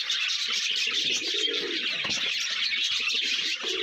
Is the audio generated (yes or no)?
no